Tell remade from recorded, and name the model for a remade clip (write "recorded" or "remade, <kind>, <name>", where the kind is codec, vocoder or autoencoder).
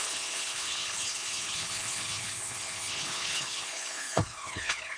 remade, codec, HILCodec